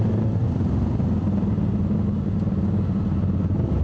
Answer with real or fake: real